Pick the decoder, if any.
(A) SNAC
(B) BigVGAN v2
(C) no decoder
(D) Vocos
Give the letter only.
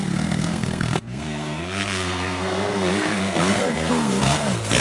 A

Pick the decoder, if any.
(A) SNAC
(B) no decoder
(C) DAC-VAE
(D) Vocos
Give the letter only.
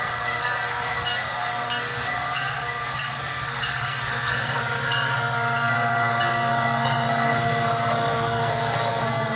A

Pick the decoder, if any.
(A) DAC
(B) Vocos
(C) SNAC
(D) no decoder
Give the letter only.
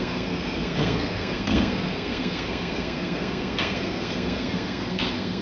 C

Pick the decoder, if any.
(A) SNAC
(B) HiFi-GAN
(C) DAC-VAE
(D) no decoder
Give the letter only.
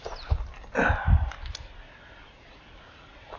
D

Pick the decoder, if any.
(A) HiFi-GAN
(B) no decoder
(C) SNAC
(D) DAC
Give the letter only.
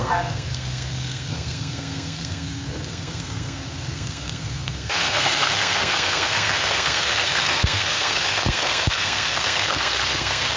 C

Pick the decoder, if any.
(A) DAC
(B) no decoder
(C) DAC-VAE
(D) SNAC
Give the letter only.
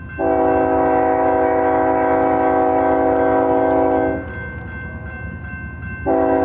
B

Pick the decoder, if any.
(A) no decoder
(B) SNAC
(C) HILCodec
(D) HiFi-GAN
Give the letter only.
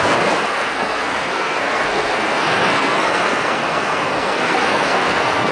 B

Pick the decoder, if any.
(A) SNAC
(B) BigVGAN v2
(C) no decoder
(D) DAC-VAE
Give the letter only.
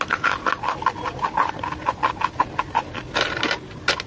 C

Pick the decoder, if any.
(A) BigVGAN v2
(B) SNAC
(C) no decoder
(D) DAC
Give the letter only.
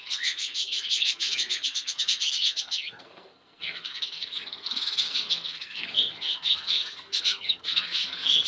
B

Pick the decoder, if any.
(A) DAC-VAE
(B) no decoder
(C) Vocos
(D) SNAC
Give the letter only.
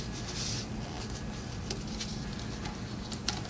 B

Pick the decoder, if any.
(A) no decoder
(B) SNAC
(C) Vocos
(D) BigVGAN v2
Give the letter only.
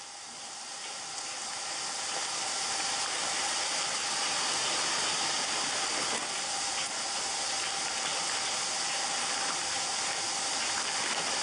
A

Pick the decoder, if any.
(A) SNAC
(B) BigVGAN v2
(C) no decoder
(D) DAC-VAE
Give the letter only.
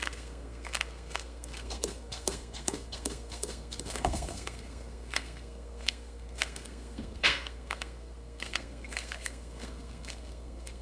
A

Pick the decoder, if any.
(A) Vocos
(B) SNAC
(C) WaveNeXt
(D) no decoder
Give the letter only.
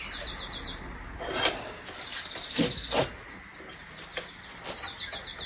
D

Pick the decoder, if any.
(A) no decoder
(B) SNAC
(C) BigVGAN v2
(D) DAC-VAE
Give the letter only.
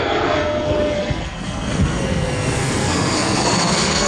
B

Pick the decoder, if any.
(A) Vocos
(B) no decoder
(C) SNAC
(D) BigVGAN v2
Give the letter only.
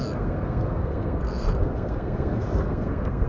C